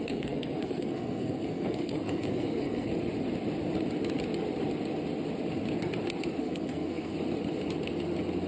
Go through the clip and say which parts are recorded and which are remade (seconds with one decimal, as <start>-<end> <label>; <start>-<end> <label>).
0.0-2.9 remade; 2.9-6.4 recorded; 6.4-7.1 remade; 7.1-8.5 recorded